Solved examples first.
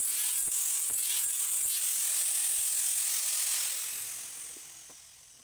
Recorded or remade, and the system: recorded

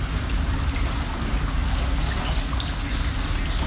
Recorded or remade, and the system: recorded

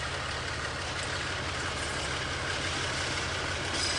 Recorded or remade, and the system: recorded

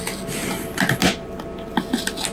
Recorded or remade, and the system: recorded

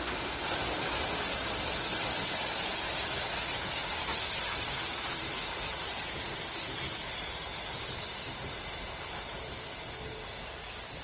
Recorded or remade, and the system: recorded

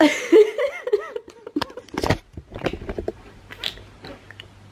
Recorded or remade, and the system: remade, vocoder, BigVGAN v2